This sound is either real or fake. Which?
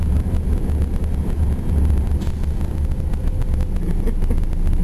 real